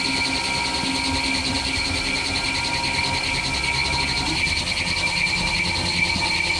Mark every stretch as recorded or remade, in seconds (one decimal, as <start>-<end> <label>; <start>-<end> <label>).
0.0-1.4 recorded; 1.4-2.6 remade; 2.6-6.6 recorded